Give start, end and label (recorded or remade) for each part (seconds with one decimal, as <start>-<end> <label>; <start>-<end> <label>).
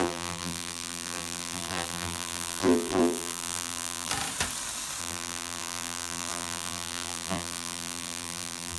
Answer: 0.0-4.1 remade; 4.1-5.0 recorded; 5.0-8.8 remade